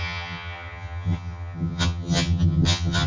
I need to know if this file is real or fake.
fake